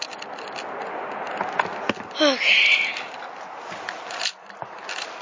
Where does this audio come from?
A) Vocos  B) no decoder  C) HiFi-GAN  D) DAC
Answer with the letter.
B